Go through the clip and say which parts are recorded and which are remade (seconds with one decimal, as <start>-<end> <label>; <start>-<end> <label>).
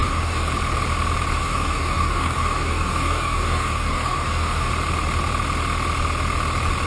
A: 0.0-0.5 remade; 0.5-1.4 recorded; 1.4-4.7 remade; 4.7-6.9 recorded